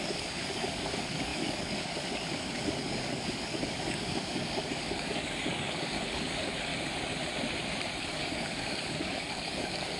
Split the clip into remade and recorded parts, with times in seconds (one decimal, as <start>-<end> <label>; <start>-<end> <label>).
0.0-6.7 remade; 6.7-8.0 recorded; 8.0-10.0 remade